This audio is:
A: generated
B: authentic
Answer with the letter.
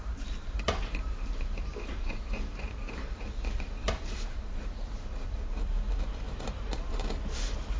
A